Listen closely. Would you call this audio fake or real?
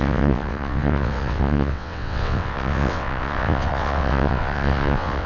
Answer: fake